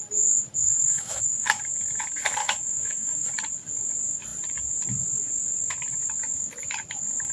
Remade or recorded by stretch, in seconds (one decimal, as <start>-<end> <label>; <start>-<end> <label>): 0.0-0.6 recorded; 0.6-1.6 remade; 1.6-2.4 recorded; 2.4-3.3 remade; 3.3-7.3 recorded